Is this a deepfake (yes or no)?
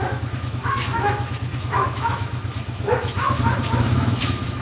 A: yes